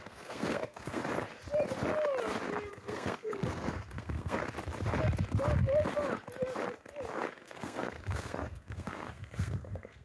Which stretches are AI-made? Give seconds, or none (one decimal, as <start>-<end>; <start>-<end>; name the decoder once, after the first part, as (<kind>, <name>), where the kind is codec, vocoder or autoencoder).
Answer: 0.0-1.0 (codec, SNAC); 2.7-4.4; 7.3-10.0